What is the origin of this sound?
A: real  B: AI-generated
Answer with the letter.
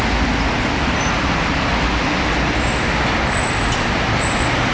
A